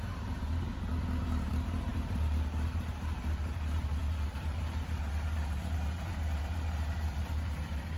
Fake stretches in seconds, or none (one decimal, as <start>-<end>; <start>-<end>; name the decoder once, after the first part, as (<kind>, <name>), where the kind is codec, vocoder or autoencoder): 0.0-0.7 (vocoder, BigVGAN v2); 1.2-8.0